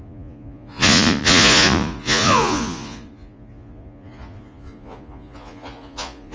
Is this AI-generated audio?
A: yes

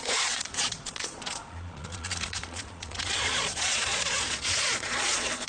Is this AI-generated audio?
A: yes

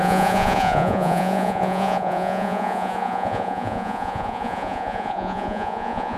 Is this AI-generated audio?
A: yes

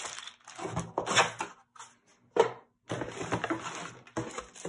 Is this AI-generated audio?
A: no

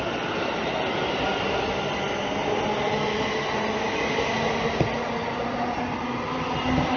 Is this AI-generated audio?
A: no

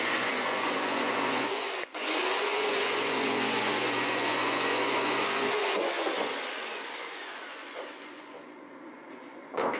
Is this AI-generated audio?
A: yes